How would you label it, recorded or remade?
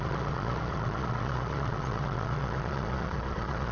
remade